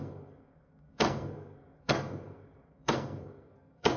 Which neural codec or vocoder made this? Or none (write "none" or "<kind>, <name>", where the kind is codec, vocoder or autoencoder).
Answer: codec, SNAC